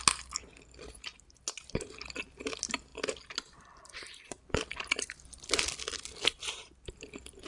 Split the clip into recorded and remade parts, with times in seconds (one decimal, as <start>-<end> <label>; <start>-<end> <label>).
0.0-7.5 recorded